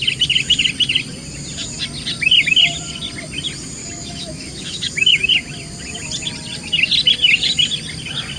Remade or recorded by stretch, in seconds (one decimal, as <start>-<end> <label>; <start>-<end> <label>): 0.0-3.8 recorded; 3.8-5.2 remade; 5.2-8.4 recorded